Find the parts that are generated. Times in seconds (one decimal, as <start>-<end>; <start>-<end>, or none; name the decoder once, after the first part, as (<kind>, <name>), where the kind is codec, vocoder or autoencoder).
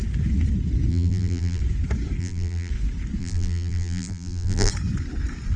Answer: 0.9-1.6 (vocoder, BigVGAN v2); 2.2-2.7; 3.2-4.7